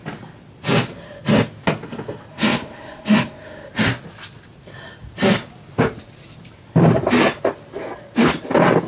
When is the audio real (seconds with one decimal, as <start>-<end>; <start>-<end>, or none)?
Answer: 0.0-2.3; 3.7-8.9

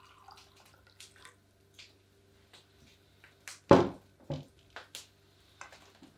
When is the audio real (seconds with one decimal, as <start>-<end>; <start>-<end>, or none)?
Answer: 0.0-6.2

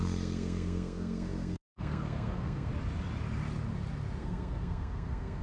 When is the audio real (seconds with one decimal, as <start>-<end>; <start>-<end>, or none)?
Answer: 2.7-4.2

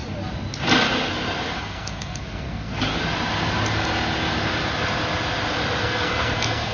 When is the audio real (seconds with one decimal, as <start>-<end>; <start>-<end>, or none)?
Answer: 0.0-1.6; 2.7-5.8

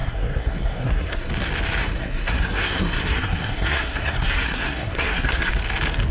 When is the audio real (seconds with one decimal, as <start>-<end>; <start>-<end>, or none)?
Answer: 1.3-1.8; 5.5-6.1

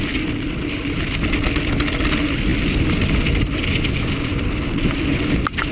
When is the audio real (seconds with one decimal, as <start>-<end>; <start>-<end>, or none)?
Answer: 0.0-5.7

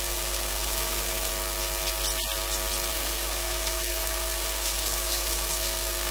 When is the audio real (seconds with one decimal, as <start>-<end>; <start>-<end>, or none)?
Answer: 1.3-2.9

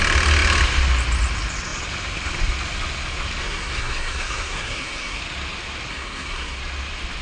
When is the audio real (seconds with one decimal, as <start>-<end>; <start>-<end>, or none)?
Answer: 0.0-3.4; 5.2-5.9; 6.6-7.2